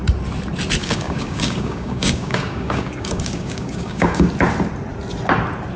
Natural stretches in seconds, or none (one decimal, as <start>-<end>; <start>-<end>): 0.0-0.8; 4.3-5.8